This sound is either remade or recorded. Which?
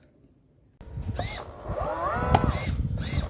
recorded